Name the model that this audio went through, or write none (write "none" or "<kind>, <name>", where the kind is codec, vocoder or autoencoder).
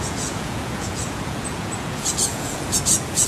vocoder, Vocos